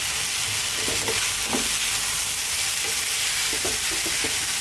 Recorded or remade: recorded